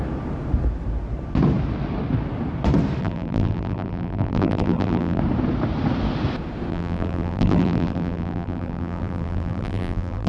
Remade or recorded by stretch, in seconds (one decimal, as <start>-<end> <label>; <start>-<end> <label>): 0.0-3.0 recorded; 3.0-5.2 remade; 5.2-6.7 recorded; 6.7-10.3 remade